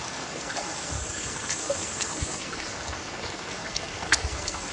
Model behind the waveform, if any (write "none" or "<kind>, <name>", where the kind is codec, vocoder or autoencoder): codec, SNAC